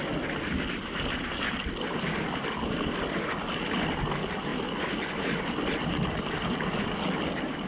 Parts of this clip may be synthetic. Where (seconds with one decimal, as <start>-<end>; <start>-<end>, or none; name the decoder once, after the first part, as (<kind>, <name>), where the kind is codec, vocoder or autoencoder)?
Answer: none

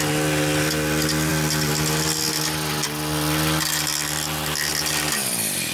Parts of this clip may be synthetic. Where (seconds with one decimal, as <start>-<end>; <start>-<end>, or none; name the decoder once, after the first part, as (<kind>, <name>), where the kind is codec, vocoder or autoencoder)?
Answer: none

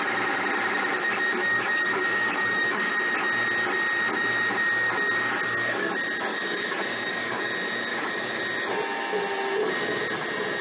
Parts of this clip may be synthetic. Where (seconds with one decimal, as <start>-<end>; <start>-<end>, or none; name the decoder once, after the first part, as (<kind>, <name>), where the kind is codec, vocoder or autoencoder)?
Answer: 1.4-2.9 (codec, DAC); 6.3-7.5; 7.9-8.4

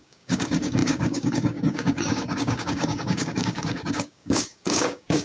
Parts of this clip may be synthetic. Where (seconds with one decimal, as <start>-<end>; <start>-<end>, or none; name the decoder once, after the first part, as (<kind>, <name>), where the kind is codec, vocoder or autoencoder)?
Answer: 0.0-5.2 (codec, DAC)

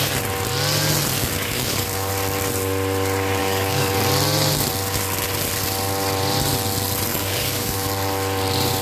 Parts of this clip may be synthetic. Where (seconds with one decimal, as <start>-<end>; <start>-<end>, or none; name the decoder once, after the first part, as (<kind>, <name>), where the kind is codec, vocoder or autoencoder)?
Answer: 1.2-2.1 (codec, DAC); 3.4-4.0; 7.1-7.9

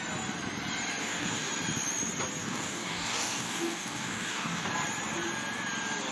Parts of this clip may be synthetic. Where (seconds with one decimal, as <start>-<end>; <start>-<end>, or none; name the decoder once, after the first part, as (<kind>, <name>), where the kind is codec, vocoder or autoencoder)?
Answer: 1.0-1.5 (codec, DAC); 2.4-4.7

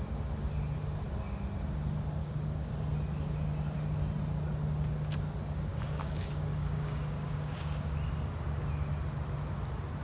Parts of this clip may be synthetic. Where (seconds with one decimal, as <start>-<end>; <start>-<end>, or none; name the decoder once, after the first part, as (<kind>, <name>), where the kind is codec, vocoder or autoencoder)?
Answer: 2.2-2.7 (codec, DAC); 5.7-7.9